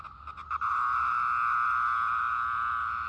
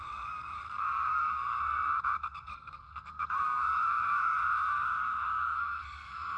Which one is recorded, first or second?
first